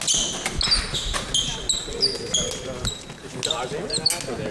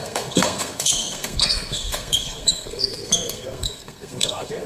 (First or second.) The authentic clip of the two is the first